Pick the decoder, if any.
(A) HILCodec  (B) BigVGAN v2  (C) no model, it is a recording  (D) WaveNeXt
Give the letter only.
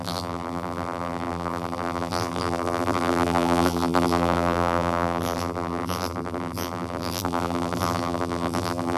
B